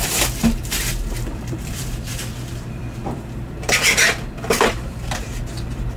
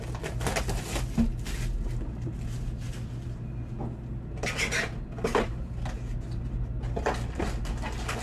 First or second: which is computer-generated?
first